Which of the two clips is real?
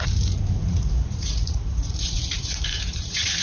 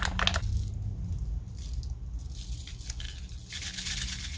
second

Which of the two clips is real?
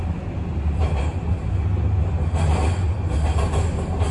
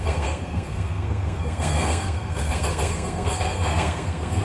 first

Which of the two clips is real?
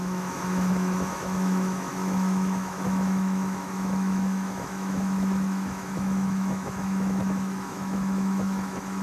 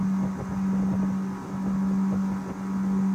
second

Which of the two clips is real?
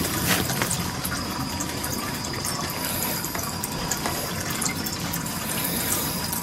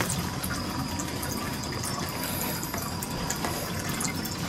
second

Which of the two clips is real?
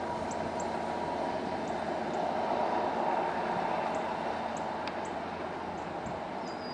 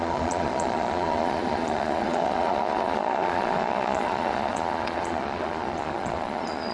first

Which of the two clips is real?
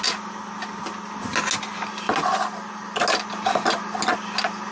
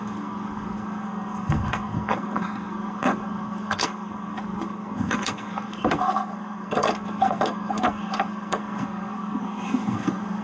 first